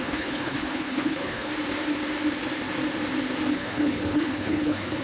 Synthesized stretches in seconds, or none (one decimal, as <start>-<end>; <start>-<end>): 0.0-1.5; 3.5-5.0

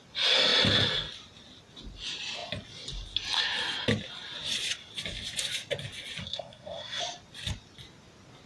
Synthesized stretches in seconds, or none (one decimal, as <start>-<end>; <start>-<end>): 6.2-7.0

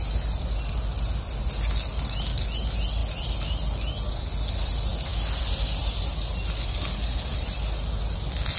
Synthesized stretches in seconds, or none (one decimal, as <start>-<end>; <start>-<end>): none

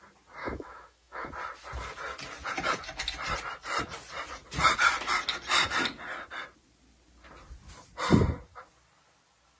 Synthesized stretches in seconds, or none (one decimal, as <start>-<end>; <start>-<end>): 0.4-1.3

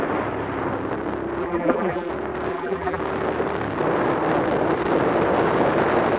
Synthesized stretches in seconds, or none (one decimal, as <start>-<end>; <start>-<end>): 1.4-2.1; 2.5-3.0

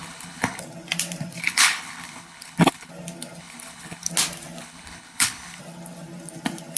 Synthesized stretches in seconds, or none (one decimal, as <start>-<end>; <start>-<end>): 0.0-0.6; 1.4-2.9; 3.4-4.1; 4.6-5.6